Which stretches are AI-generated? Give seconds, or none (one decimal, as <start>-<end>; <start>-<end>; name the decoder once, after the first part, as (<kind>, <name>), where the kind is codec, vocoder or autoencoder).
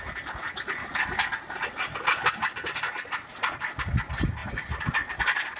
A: none